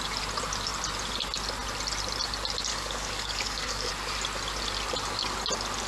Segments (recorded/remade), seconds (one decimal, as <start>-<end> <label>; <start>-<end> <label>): 0.0-2.7 recorded; 2.7-3.9 remade; 3.9-5.9 recorded